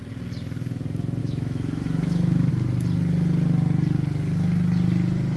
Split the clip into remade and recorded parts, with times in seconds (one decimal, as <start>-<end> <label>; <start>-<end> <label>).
0.0-1.2 recorded; 1.2-2.5 remade; 2.5-5.4 recorded